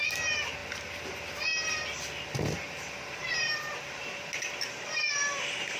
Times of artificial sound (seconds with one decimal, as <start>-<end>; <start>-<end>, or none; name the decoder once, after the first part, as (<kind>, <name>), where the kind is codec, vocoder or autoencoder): 3.2-4.3 (vocoder, BigVGAN v2)